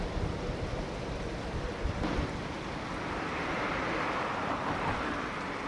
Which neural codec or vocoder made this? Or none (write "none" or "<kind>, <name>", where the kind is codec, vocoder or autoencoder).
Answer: vocoder, BigVGAN v2